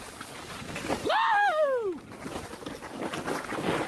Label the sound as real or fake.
real